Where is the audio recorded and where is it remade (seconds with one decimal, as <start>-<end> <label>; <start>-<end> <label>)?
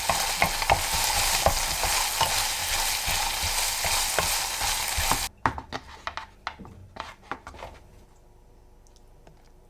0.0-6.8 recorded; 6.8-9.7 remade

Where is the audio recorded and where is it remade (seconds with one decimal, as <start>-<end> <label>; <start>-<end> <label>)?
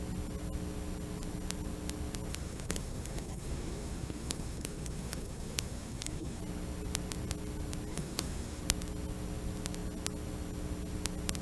0.0-2.3 recorded; 2.3-6.4 remade; 6.4-7.9 recorded; 7.9-8.6 remade; 8.6-11.4 recorded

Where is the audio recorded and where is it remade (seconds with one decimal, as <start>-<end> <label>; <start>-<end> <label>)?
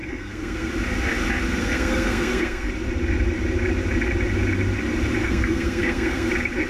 0.0-0.7 remade; 0.7-1.6 recorded; 1.6-2.7 remade; 2.7-5.2 recorded; 5.2-6.3 remade; 6.3-6.7 recorded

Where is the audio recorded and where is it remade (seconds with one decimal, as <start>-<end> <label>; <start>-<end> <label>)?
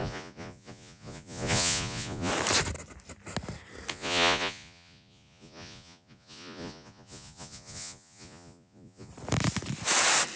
0.0-2.3 remade; 2.3-3.9 recorded; 3.9-9.1 remade; 9.1-10.4 recorded